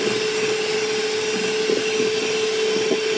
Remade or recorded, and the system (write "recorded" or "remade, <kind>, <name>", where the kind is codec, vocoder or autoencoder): recorded